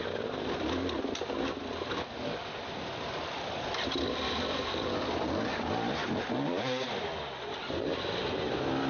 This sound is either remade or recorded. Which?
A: recorded